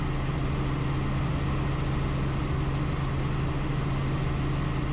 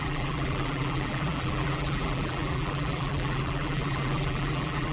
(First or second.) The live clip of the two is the first